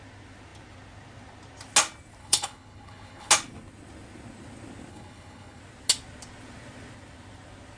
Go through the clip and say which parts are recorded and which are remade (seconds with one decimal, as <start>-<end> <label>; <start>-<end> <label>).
0.0-2.2 recorded; 2.2-3.3 remade; 3.3-4.9 recorded; 4.9-5.6 remade; 5.6-7.8 recorded

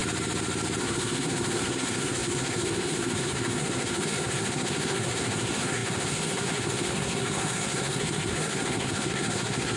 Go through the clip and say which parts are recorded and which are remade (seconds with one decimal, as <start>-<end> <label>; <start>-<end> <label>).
0.0-0.8 recorded; 0.8-9.8 remade

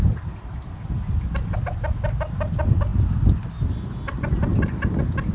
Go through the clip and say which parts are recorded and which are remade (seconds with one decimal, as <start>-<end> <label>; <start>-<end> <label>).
0.0-5.3 recorded